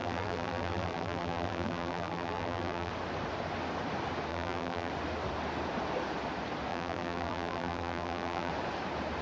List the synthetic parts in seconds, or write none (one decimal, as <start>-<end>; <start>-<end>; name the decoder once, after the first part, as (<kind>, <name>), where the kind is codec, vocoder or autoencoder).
0.0-2.9 (vocoder, BigVGAN v2); 4.3-4.9; 6.7-8.5